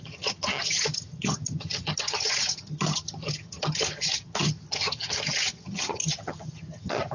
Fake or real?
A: fake